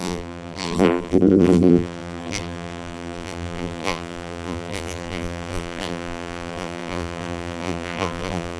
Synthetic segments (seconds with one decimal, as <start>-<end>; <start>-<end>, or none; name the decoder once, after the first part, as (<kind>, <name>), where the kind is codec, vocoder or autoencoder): 0.0-8.6 (vocoder, BigVGAN v2)